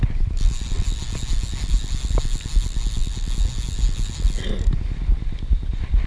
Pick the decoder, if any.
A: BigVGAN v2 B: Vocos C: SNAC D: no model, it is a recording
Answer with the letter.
D